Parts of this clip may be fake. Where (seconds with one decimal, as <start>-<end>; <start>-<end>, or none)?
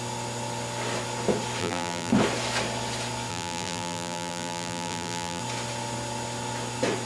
1.6-2.1; 3.3-5.4